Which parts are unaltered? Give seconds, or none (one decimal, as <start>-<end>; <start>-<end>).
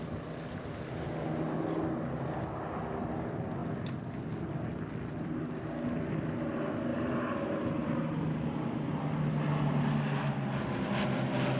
0.0-6.9; 7.7-11.6